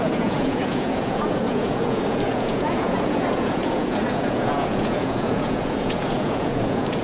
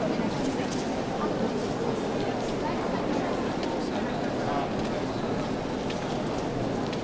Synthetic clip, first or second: first